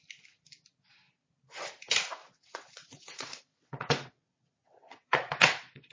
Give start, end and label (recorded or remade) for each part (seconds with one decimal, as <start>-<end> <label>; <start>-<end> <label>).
0.0-2.2 recorded; 2.2-5.9 remade